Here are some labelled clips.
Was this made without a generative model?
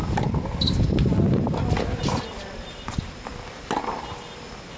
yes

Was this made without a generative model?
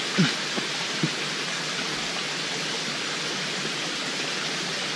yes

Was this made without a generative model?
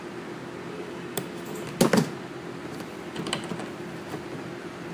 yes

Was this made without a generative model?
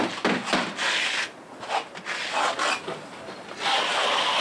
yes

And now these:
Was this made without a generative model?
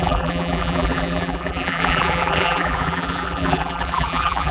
no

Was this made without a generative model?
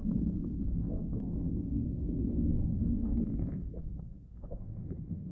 no